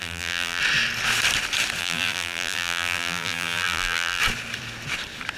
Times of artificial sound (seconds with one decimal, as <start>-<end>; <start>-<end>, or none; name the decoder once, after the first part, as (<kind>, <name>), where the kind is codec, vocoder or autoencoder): 0.0-0.6 (vocoder, BigVGAN v2); 1.8-4.2